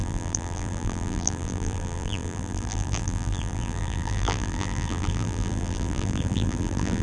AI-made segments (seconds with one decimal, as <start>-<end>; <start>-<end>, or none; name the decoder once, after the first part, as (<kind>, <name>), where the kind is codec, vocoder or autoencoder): 0.0-7.0 (vocoder, BigVGAN v2)